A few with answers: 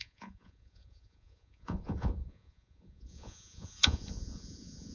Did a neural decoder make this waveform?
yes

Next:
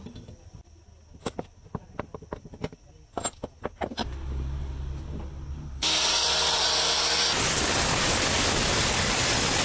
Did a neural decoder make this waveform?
no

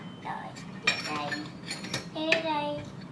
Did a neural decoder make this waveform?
no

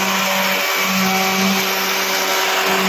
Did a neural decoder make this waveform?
no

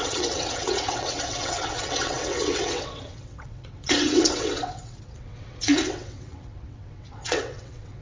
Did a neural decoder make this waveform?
yes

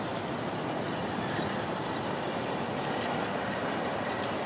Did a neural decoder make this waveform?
no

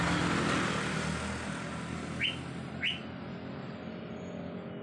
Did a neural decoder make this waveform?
no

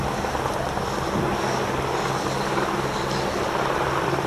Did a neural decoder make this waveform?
no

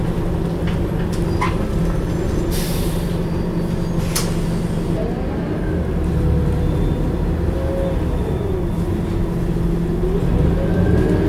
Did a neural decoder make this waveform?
no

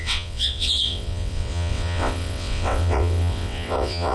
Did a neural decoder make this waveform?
yes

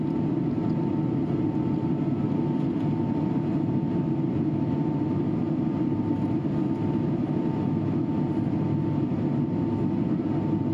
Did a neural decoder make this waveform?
no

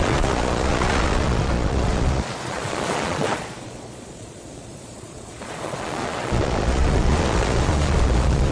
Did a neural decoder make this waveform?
yes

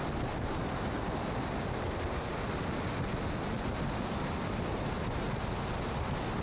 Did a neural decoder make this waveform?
no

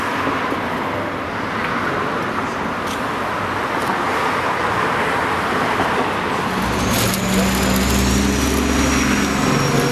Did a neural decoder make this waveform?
no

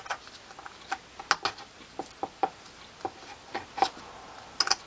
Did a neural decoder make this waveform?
no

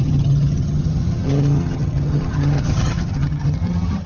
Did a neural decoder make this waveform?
yes